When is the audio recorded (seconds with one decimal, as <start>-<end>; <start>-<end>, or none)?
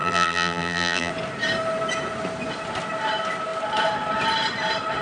1.1-5.0